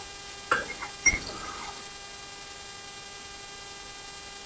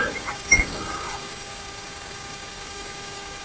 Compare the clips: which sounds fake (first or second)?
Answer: second